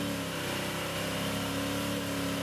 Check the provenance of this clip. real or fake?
real